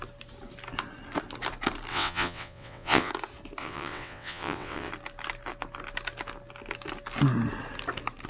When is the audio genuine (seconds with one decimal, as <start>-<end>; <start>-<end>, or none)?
0.0-1.9; 3.1-3.6; 4.9-8.3